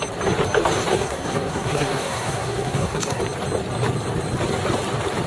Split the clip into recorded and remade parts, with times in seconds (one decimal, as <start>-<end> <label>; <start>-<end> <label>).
0.0-0.9 recorded; 0.9-3.2 remade; 3.2-5.3 recorded